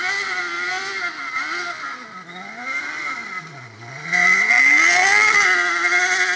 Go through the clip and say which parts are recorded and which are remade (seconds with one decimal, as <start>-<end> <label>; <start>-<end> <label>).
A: 0.0-6.4 recorded